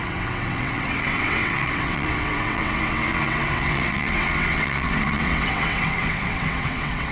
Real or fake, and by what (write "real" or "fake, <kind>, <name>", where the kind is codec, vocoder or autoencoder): fake, vocoder, WaveNeXt